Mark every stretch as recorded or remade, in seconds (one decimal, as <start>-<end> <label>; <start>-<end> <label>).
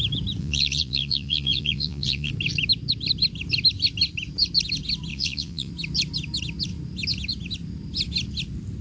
0.0-0.4 recorded; 0.4-2.3 remade; 2.3-5.1 recorded; 5.1-5.7 remade; 5.7-8.8 recorded